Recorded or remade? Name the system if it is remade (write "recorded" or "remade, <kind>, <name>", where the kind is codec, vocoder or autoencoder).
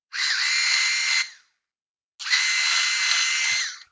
recorded